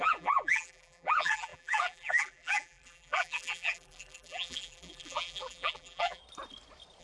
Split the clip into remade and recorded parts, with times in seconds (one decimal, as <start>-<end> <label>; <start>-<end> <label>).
0.0-6.2 remade; 6.2-7.0 recorded

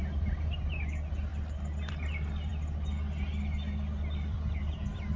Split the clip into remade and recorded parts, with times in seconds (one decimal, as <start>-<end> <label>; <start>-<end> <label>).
0.0-5.2 recorded

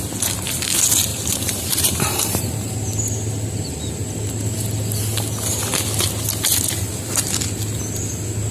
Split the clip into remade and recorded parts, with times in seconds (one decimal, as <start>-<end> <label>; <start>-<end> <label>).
0.0-1.1 recorded; 1.1-2.7 remade; 2.7-8.5 recorded

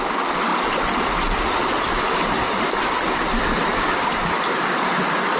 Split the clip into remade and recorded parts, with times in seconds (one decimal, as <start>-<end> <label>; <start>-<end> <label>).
0.0-0.5 remade; 0.5-1.5 recorded; 1.5-5.4 remade